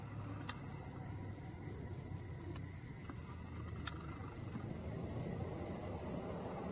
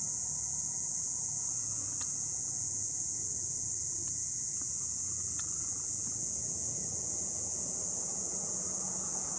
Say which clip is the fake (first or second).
second